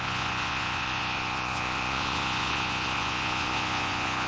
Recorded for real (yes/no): no